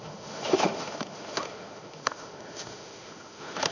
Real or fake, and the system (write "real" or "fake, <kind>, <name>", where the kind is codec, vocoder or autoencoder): fake, autoencoder, DAC-VAE